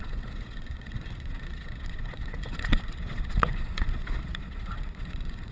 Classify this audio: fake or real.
fake